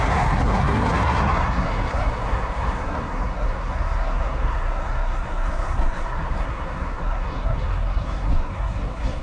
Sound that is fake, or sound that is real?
fake